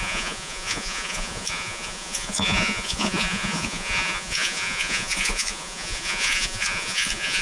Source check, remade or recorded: remade